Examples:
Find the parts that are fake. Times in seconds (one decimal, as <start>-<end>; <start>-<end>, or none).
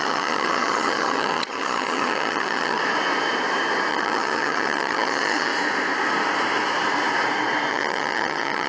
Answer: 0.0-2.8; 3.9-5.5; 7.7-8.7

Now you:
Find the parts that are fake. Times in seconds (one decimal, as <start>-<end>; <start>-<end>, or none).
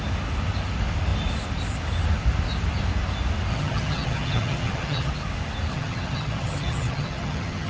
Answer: 3.5-5.1; 5.7-7.7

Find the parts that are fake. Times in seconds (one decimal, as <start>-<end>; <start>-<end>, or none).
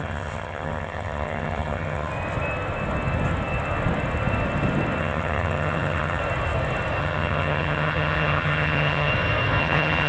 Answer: 0.0-2.1; 5.0-6.2; 7.0-9.1; 9.6-10.1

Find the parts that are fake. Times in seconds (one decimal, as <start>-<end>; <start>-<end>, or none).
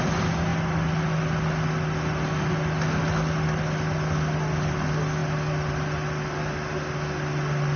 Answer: none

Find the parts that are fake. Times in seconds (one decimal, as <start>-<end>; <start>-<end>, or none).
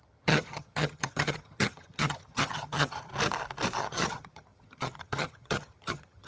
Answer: 0.0-3.1; 3.8-6.3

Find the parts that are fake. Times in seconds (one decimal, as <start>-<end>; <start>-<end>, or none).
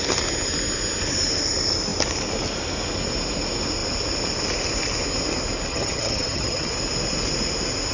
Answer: 5.7-6.7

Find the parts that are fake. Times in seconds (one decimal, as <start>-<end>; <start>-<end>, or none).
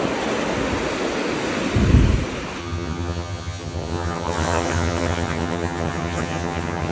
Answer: 2.6-6.9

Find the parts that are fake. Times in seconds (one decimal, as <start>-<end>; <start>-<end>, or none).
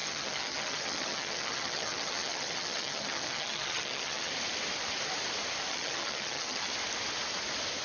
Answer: 0.0-4.3; 5.7-6.7